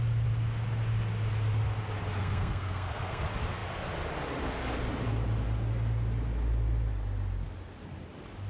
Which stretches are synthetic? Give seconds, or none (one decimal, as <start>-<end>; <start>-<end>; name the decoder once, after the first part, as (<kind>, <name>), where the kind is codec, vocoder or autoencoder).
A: 2.2-3.2 (codec, SNAC)